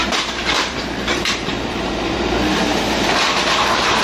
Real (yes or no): no